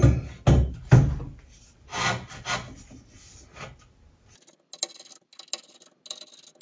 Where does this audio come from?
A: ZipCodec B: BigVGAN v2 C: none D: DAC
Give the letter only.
C